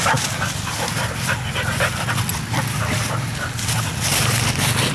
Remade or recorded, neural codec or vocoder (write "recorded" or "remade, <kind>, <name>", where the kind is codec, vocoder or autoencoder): recorded